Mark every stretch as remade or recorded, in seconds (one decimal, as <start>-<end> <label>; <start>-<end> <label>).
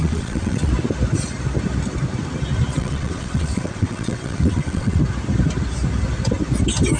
0.0-0.7 remade; 0.7-2.7 recorded; 2.7-5.0 remade; 5.0-7.0 recorded